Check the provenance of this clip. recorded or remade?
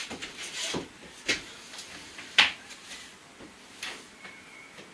recorded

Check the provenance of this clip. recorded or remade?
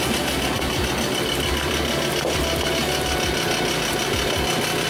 recorded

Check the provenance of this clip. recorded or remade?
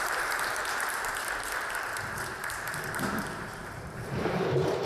remade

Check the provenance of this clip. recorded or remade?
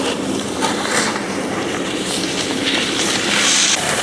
remade